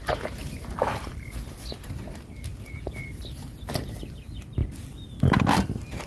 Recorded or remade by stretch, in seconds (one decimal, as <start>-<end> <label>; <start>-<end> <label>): 0.0-0.7 remade; 0.7-6.1 recorded